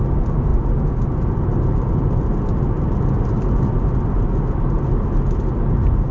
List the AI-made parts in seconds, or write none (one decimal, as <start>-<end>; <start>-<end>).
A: none